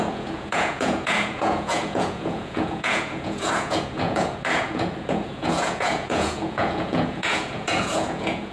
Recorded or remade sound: remade